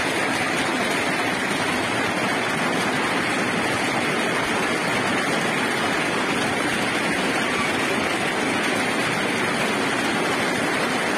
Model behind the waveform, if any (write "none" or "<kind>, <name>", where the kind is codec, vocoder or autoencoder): none